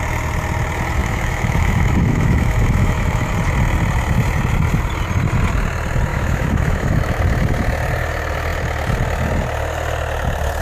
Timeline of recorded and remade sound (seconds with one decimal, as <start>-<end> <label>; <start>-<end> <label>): 0.0-1.0 recorded; 1.0-3.3 remade; 3.3-6.1 recorded; 6.1-7.2 remade; 7.2-10.6 recorded